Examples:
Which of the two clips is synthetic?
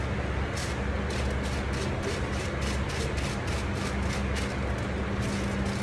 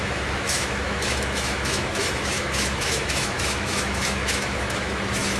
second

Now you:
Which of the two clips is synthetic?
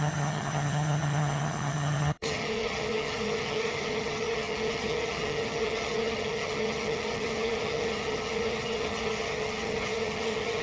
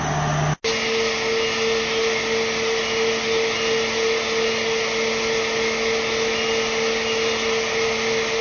first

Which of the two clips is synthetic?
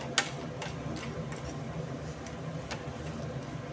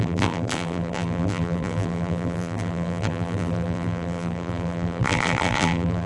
second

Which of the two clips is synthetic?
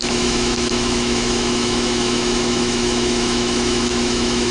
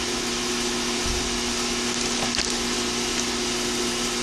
first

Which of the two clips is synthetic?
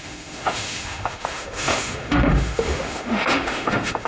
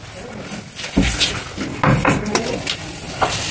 first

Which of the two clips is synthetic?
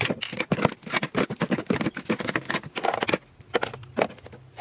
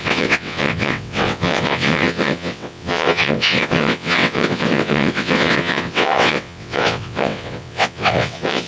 second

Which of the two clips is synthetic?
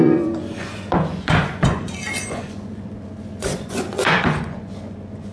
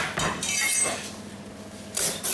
first